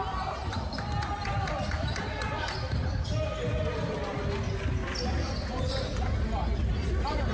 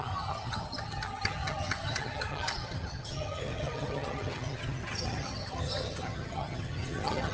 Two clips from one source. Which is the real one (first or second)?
first